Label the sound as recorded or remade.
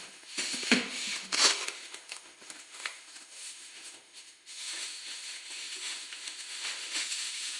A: remade